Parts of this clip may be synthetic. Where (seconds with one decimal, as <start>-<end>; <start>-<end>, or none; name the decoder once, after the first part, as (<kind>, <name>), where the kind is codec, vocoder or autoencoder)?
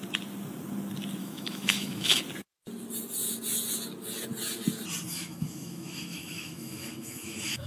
1.2-2.2 (autoencoder, DAC-VAE); 5.1-7.7